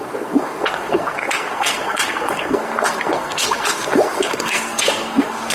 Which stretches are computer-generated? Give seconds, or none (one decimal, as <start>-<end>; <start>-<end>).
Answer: 0.0-5.5